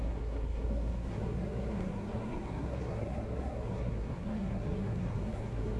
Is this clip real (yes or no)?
no